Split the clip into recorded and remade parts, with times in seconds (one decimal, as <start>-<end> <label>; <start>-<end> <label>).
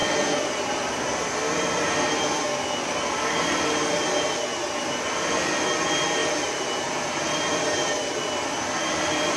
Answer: 0.0-6.2 recorded; 6.2-7.2 remade; 7.2-9.4 recorded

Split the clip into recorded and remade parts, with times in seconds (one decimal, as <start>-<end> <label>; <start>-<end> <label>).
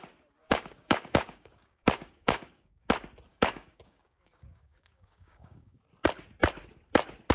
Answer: 0.0-0.4 recorded; 0.4-2.9 remade; 2.9-3.3 recorded; 3.3-5.8 remade; 5.8-7.3 recorded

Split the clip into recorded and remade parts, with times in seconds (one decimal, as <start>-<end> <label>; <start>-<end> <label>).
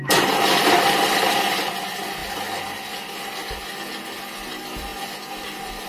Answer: 0.0-5.9 recorded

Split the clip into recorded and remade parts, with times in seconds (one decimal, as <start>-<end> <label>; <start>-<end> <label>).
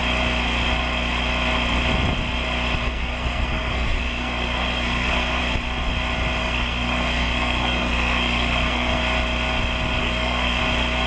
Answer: 0.0-2.8 recorded; 2.8-5.4 remade; 5.4-6.4 recorded; 6.4-9.0 remade; 9.0-10.0 recorded; 10.0-10.6 remade; 10.6-11.1 recorded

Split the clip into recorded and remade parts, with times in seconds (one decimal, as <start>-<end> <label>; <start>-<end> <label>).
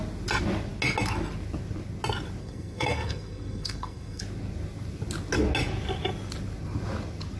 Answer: 0.0-2.4 recorded; 2.4-4.2 remade; 4.2-7.4 recorded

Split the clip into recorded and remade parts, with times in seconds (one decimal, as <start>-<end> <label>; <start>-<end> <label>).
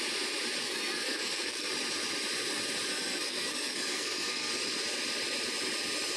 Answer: 0.0-0.6 recorded; 0.6-1.7 remade; 1.7-2.9 recorded; 2.9-4.5 remade; 4.5-6.2 recorded